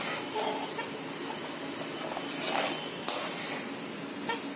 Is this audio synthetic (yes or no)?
no